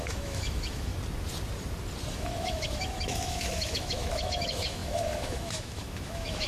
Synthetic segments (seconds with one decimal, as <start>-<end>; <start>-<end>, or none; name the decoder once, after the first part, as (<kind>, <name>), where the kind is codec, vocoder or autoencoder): 0.0-0.9 (autoencoder, DAC-VAE); 2.1-6.5